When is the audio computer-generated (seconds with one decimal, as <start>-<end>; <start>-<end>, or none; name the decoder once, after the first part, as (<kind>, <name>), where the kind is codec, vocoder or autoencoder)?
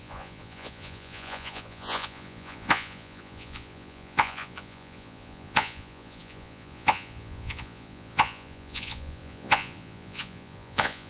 0.0-11.1 (vocoder, Vocos)